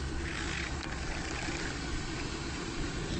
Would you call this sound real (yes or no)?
yes